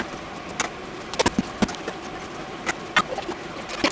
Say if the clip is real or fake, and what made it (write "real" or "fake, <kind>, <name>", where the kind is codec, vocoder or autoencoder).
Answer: real